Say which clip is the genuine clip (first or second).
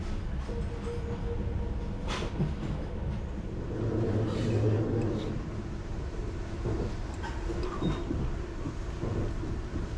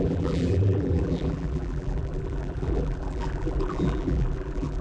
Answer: first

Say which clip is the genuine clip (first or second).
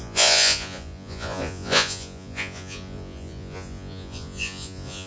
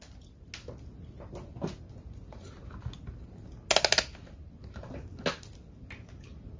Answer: second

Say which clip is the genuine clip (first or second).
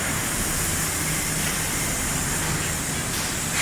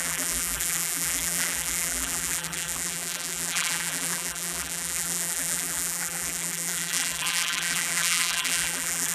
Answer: first